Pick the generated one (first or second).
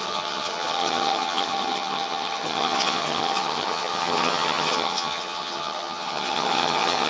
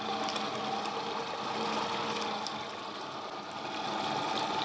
first